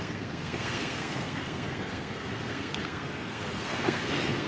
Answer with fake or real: fake